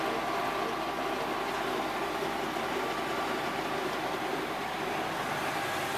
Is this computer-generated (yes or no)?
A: no